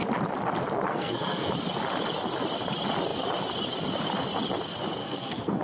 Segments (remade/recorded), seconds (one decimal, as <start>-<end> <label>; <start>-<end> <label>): 0.0-0.9 recorded; 0.9-1.5 remade; 1.5-5.0 recorded; 5.0-5.6 remade